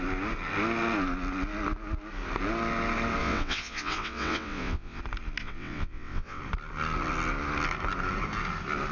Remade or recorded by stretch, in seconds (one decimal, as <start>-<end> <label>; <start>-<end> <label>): 0.0-3.2 recorded; 3.2-5.0 remade; 5.0-5.4 recorded; 5.4-6.4 remade; 6.4-8.9 recorded